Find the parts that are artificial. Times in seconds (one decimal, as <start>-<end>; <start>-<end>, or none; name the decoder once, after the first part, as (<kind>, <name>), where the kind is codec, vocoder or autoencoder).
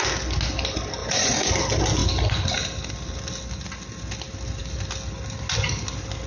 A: 1.0-1.5 (vocoder, Vocos)